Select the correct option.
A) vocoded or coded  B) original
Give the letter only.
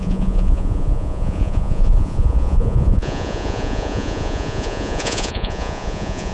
A